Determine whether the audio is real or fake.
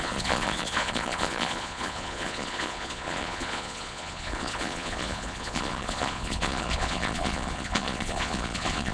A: fake